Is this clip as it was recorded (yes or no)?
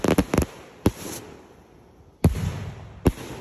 yes